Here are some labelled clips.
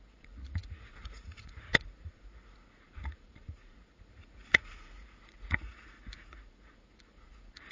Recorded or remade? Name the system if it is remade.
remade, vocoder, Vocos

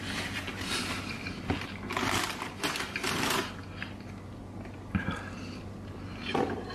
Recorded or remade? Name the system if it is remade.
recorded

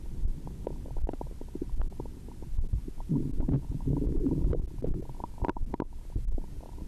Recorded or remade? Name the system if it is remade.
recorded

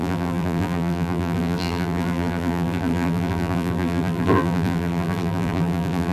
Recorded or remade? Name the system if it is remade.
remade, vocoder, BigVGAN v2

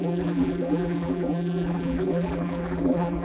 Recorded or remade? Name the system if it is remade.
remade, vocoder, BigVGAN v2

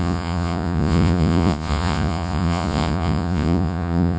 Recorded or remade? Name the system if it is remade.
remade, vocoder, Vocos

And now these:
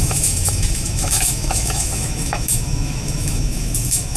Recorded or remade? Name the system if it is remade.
remade, autoencoder, DAC-VAE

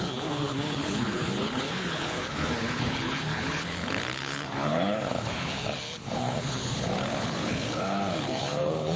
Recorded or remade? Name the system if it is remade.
remade, codec, HILCodec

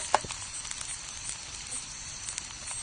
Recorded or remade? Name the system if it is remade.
recorded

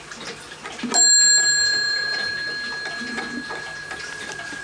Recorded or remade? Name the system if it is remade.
recorded